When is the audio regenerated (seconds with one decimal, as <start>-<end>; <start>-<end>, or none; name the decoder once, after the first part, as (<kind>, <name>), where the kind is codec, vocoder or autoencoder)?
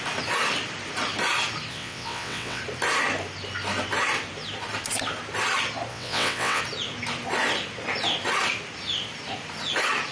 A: 1.7-2.6 (vocoder, WaveNeXt); 5.9-6.6